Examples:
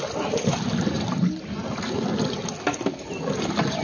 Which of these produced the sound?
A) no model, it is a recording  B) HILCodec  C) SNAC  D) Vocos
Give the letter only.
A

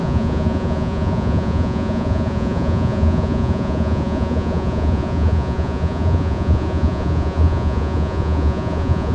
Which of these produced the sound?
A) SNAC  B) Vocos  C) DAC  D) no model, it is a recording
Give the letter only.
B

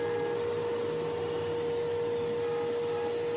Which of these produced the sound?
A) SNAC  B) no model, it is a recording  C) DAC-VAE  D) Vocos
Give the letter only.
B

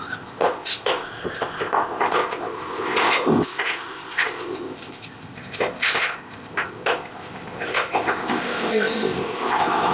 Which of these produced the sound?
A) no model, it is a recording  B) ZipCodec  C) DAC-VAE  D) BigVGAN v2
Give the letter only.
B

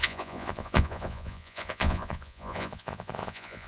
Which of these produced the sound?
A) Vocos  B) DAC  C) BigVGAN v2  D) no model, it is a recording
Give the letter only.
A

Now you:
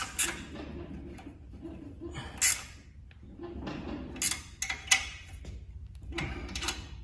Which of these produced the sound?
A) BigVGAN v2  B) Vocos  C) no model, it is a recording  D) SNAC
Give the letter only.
C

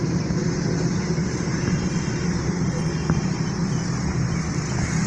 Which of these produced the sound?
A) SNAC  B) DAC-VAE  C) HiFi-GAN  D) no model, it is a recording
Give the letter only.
D